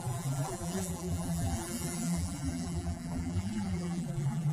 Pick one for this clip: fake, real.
fake